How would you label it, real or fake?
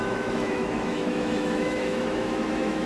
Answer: fake